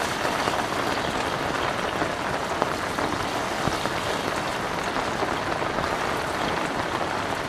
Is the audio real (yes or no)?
yes